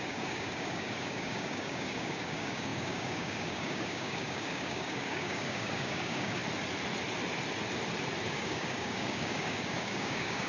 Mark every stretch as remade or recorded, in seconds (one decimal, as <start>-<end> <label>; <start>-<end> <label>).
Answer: 0.0-6.4 remade; 6.4-8.2 recorded; 8.2-10.5 remade